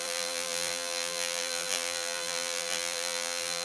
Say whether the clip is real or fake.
fake